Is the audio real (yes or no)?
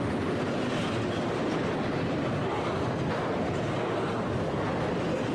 yes